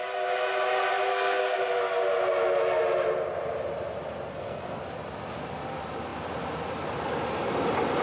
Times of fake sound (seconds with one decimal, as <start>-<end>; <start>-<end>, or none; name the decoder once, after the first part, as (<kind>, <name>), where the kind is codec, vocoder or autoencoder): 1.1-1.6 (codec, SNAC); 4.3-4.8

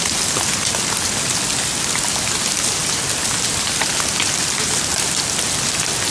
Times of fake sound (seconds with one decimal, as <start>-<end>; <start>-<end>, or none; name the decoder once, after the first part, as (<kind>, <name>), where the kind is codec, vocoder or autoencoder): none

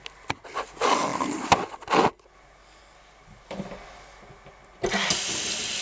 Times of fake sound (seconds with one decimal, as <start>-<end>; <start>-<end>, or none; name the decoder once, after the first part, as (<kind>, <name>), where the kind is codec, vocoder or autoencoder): none